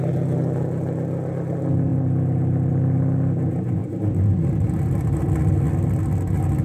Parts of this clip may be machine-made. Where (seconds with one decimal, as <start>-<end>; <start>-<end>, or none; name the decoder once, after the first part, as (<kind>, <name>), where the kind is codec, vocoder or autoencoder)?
3.8-5.3 (vocoder, BigVGAN v2)